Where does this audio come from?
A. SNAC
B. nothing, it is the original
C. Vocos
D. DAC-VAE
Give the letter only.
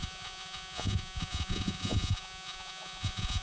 C